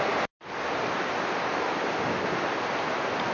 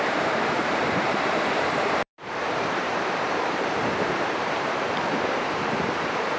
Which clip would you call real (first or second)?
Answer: first